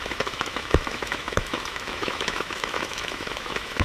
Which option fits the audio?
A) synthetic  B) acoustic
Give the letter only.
A